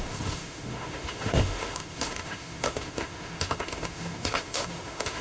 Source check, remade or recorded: remade